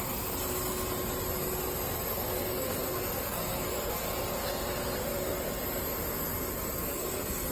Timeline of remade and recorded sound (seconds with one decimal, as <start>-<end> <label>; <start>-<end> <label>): 0.0-2.1 recorded; 2.1-4.0 remade; 4.0-6.8 recorded; 6.8-7.5 remade